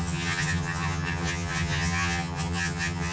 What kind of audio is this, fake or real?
fake